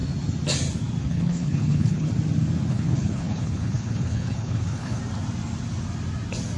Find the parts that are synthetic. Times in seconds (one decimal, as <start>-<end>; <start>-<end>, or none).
1.0-2.1; 2.7-5.0